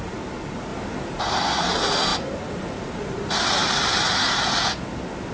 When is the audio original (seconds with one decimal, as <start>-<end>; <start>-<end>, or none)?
0.0-2.1; 4.4-5.3